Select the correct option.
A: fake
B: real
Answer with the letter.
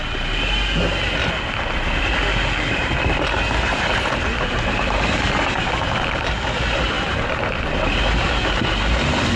B